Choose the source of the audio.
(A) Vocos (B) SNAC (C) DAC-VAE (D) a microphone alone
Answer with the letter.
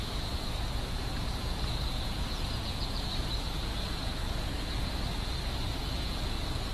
A